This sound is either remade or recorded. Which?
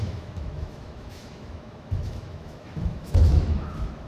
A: remade